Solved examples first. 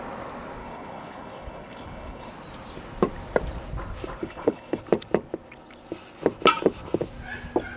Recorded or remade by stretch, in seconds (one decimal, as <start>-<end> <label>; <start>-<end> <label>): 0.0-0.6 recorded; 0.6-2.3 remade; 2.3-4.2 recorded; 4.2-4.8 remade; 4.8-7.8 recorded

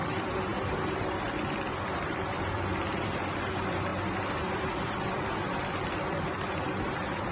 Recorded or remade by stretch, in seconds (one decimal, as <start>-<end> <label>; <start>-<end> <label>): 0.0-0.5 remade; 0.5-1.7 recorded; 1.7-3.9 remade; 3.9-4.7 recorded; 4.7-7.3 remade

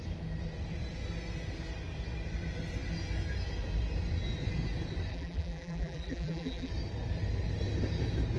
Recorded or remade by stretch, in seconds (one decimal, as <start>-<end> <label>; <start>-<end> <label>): 0.0-5.1 recorded; 5.1-6.7 remade; 6.7-8.4 recorded

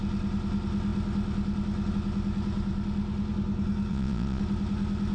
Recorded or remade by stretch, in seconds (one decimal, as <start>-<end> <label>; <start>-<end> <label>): 0.0-3.9 recorded; 3.9-4.4 remade; 4.4-5.1 recorded

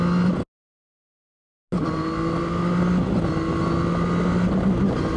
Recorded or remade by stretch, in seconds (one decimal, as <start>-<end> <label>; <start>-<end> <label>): 0.0-5.2 recorded